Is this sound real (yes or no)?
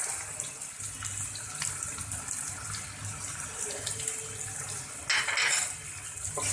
yes